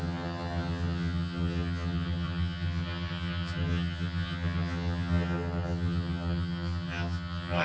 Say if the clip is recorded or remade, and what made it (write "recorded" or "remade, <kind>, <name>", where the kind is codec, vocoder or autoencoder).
remade, vocoder, HiFi-GAN